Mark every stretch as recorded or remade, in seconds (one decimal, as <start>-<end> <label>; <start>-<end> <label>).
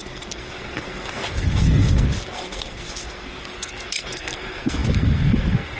0.0-5.8 remade